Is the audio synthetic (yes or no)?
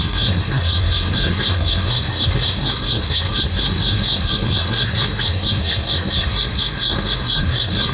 yes